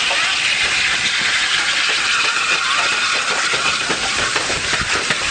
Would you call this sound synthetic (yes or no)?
yes